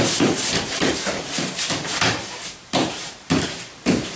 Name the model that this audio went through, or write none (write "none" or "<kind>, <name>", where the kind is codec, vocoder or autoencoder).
vocoder, BigVGAN v2